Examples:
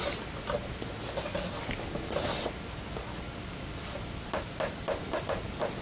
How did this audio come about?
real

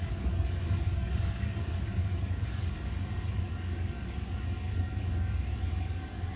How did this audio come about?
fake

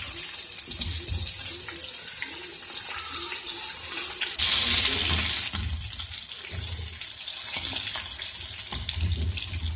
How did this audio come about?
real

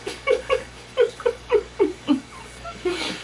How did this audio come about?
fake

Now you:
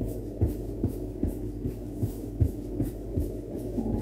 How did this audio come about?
fake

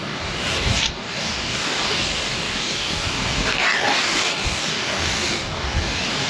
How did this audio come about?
fake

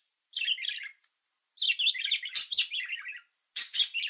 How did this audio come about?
real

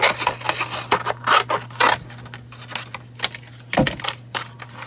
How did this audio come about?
real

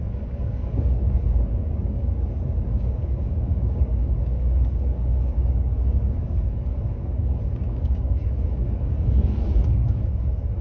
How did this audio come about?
fake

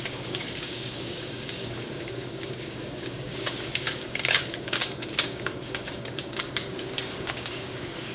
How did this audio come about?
fake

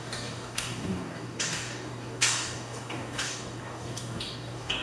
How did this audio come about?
fake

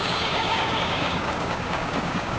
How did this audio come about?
fake